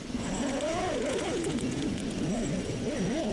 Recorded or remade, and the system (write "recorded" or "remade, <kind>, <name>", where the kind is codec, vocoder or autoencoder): remade, vocoder, Vocos